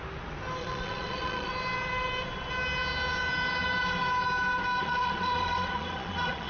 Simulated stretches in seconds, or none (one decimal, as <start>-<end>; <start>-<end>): 0.6-1.5; 4.8-6.5